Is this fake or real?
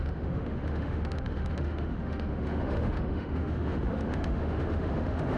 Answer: fake